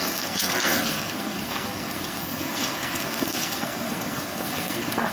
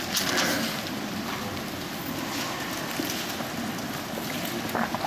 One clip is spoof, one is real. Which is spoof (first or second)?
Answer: first